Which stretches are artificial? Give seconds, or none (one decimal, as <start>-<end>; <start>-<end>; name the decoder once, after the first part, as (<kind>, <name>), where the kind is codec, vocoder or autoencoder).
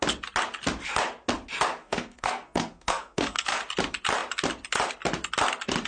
1.8-3.6 (codec, SNAC)